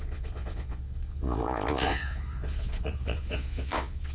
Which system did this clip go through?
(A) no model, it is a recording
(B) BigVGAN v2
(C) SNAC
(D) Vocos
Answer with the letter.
D